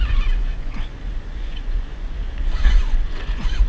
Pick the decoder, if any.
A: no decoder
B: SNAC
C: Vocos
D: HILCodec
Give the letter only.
C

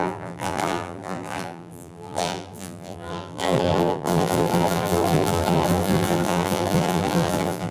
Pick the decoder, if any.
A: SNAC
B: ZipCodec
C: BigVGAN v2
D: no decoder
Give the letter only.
C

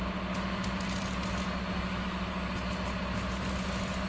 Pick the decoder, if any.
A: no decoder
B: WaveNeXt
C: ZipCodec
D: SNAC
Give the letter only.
A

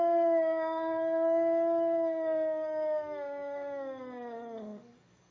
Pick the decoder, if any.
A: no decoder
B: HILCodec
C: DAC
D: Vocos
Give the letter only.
C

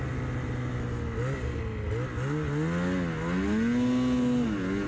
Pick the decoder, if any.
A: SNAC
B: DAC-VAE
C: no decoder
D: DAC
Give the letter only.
C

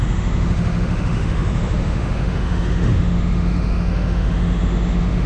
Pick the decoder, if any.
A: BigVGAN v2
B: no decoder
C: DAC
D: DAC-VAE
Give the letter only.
D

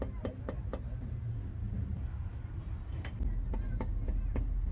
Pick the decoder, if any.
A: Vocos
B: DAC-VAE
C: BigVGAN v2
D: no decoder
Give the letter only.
D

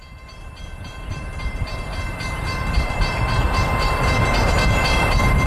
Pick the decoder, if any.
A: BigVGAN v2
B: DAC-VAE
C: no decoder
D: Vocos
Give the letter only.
A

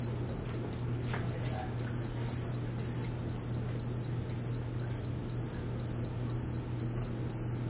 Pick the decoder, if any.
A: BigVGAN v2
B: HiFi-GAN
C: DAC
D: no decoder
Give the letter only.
D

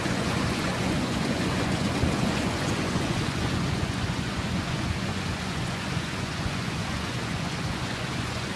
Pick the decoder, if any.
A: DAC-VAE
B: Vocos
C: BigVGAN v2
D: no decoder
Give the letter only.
B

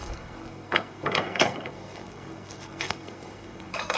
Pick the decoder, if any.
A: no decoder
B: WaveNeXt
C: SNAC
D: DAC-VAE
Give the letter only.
C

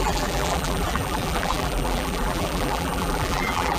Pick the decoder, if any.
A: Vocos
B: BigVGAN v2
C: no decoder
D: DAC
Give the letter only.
B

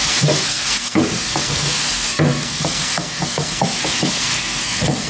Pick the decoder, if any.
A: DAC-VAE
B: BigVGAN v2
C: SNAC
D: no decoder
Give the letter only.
C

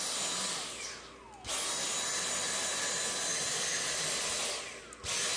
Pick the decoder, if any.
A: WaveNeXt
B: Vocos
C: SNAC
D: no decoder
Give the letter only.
D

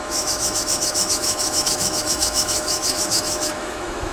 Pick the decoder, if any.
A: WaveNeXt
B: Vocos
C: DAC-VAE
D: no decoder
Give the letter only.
C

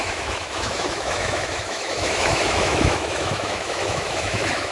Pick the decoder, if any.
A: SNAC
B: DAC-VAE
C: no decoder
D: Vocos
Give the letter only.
B